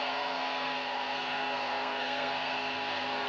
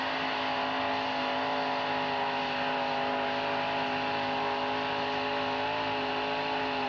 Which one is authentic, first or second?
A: second